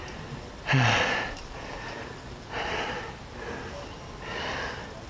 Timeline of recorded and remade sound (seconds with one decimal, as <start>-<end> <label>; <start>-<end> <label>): 0.0-5.1 recorded